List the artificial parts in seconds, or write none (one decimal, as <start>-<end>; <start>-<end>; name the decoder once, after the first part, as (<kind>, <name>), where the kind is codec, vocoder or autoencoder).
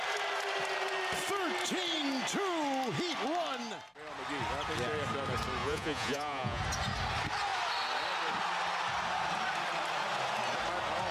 5.6-6.6 (vocoder, Vocos)